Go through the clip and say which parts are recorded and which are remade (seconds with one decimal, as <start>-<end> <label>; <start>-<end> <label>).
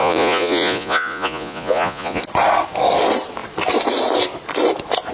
0.0-2.2 remade; 2.2-5.1 recorded